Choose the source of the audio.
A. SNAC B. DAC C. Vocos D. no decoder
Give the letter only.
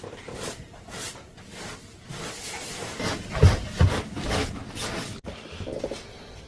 D